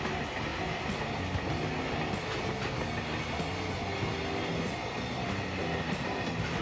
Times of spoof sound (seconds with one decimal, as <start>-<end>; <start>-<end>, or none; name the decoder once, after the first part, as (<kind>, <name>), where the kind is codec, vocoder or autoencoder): none